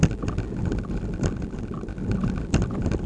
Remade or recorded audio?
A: recorded